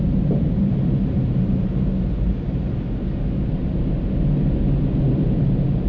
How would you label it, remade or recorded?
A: recorded